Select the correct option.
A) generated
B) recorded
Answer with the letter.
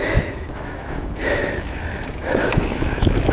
A